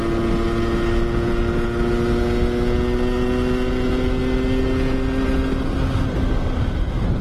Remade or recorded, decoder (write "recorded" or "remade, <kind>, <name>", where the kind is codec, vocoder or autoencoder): recorded